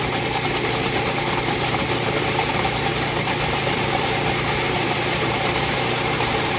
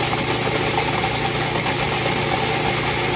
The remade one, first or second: first